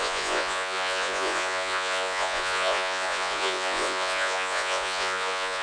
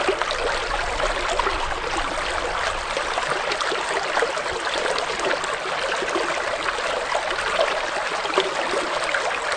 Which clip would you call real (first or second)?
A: second